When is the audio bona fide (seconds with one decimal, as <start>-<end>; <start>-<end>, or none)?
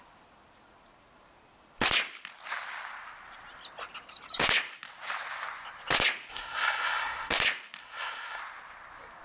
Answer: 0.0-6.3; 7.3-7.8; 8.4-9.2